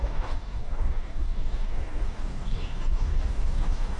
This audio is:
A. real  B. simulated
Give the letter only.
B